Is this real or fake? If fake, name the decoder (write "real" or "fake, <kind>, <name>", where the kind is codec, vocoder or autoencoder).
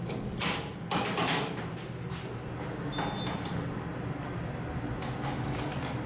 real